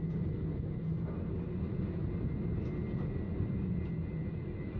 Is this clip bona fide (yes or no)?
yes